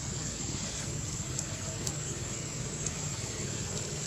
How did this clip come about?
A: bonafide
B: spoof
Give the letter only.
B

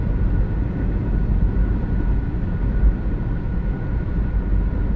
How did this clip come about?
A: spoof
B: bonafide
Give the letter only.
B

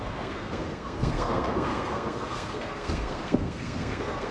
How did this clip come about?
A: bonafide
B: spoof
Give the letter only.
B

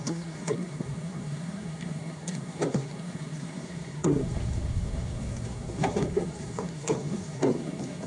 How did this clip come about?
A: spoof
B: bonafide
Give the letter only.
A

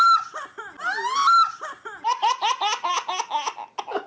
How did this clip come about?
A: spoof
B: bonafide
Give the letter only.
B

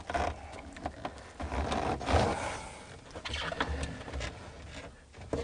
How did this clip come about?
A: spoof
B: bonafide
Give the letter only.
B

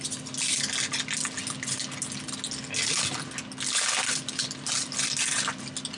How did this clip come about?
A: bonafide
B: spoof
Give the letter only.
A